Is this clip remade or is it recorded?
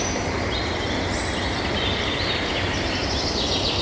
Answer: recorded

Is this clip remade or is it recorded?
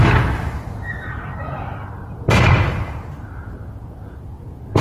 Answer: recorded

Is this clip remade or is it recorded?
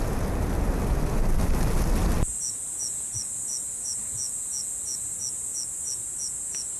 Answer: recorded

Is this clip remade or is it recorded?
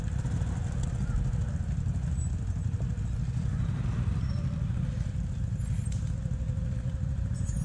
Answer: recorded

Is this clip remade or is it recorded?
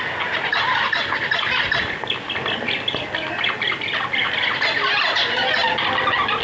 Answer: recorded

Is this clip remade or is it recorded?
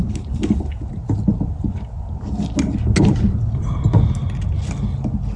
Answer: recorded